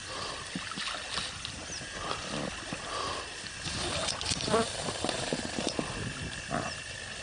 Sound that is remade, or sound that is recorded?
recorded